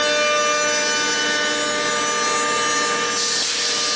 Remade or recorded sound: recorded